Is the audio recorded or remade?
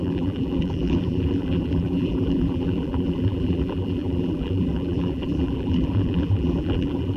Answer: remade